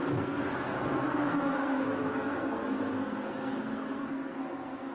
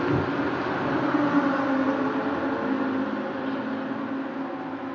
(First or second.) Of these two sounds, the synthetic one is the first